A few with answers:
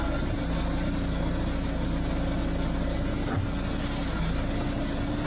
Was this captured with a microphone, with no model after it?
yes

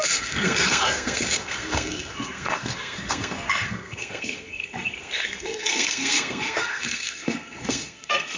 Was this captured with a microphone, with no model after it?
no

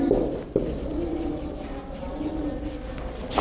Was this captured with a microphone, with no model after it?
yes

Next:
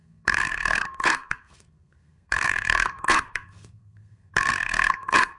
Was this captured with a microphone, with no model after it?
no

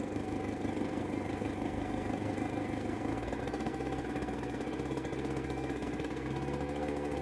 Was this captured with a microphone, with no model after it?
no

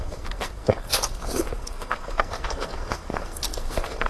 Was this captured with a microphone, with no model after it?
no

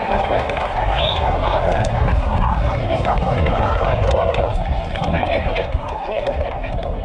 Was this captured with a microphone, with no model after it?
no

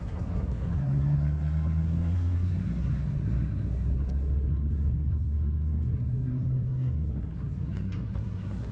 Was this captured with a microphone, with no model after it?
no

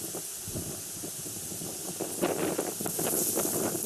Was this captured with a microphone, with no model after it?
yes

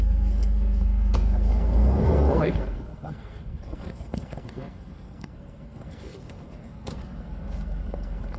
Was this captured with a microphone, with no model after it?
no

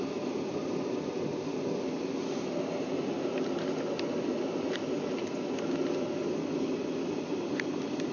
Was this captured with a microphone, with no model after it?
yes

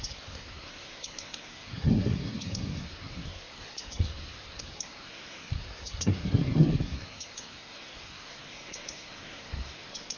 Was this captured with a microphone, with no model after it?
no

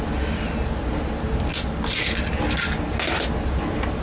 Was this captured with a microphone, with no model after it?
yes